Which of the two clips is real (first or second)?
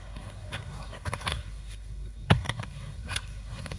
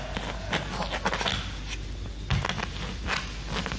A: second